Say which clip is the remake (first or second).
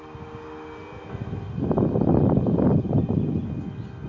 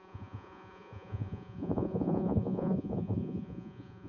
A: second